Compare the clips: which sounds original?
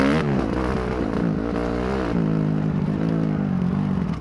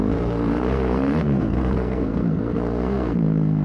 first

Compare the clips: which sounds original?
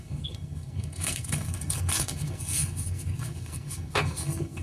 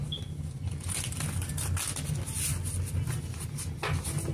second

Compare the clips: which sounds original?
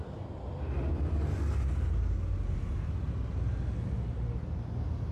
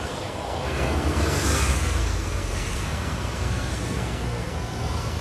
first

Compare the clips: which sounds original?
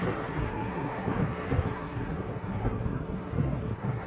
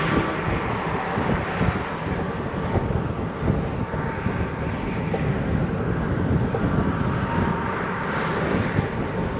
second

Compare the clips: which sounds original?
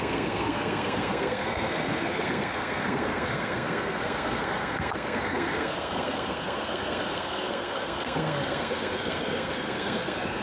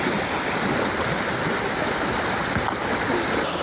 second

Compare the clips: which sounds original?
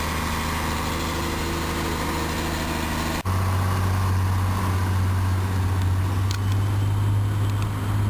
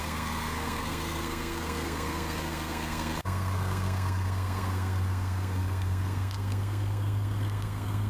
first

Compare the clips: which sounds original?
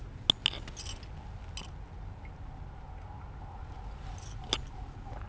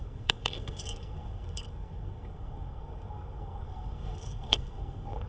first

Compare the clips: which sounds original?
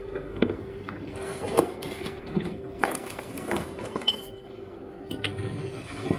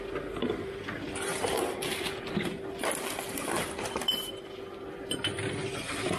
second